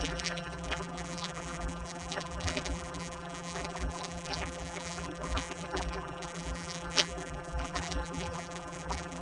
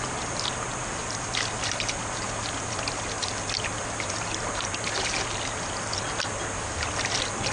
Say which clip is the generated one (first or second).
first